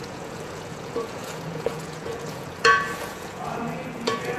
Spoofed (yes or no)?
yes